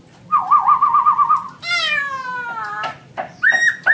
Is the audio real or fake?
real